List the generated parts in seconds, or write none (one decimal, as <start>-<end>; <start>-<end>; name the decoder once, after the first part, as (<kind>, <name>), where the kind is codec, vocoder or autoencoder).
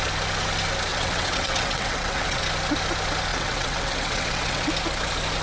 0.9-2.4 (vocoder, WaveNeXt); 3.3-4.7